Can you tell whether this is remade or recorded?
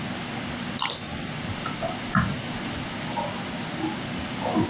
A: recorded